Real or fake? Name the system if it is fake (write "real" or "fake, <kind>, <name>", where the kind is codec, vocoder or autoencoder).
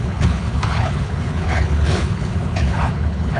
fake, codec, HILCodec